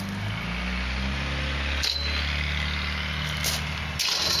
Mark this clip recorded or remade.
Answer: recorded